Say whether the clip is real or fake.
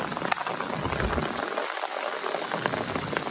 real